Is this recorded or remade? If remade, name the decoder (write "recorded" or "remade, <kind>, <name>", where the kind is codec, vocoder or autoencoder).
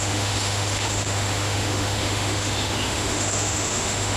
remade, autoencoder, DAC-VAE